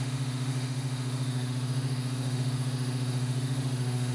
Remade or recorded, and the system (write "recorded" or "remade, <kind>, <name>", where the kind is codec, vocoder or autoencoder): remade, autoencoder, DAC-VAE